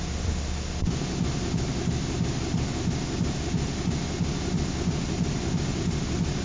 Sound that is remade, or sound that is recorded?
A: recorded